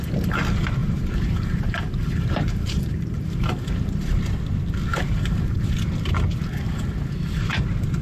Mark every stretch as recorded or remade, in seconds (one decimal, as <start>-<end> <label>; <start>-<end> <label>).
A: 0.0-0.8 recorded; 0.8-4.1 remade; 4.1-4.9 recorded; 4.9-5.7 remade; 5.7-8.0 recorded